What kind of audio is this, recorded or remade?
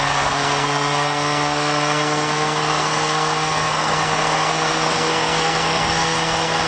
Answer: remade